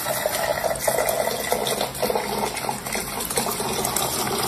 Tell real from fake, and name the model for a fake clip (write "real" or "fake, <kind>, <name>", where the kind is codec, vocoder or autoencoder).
real